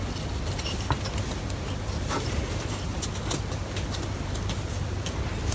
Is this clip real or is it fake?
real